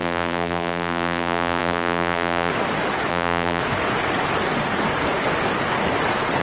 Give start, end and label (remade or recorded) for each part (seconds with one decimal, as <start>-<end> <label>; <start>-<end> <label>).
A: 0.0-2.5 remade; 2.5-3.1 recorded; 3.1-3.6 remade; 3.6-6.4 recorded